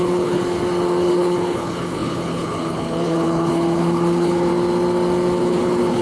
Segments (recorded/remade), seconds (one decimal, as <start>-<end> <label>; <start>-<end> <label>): 0.0-0.4 remade; 0.4-1.0 recorded; 1.0-4.5 remade; 4.5-5.4 recorded; 5.4-6.0 remade